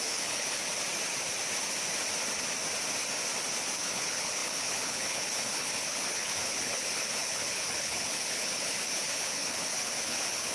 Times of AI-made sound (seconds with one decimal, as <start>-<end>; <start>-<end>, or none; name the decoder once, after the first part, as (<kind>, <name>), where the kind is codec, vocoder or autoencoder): 0.0-0.6 (codec, HILCodec); 3.8-10.5